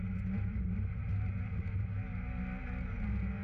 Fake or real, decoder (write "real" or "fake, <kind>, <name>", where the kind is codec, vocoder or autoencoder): real